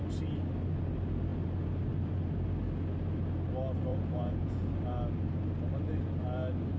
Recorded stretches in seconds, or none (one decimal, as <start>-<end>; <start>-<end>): 0.0-3.9; 4.7-6.8